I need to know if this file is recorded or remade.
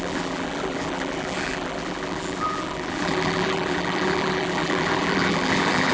remade